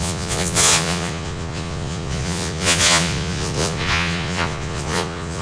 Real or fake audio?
fake